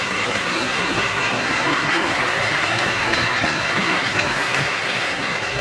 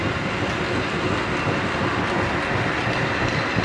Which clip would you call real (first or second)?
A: second